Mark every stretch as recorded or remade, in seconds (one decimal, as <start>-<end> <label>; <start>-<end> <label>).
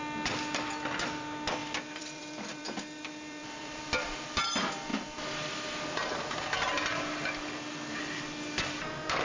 0.0-1.6 recorded; 1.6-3.8 remade; 3.8-9.2 recorded